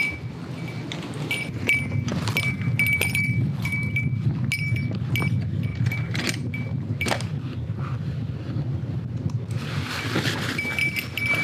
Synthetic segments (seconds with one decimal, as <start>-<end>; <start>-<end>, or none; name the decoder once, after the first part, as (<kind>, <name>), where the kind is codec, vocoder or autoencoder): 5.7-7.1 (vocoder, BigVGAN v2)